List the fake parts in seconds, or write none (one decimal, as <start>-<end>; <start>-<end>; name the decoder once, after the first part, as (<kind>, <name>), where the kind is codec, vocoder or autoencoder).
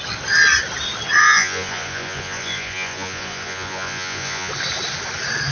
1.2-4.5 (vocoder, Vocos)